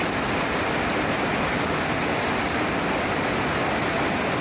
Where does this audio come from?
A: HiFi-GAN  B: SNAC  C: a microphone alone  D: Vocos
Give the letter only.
C